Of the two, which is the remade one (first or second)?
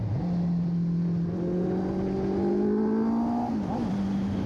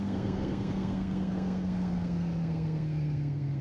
second